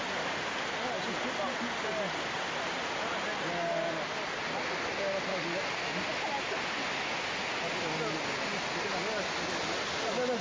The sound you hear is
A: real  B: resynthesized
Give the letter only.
A